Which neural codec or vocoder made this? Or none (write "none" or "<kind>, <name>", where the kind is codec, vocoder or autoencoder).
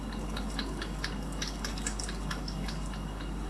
codec, DAC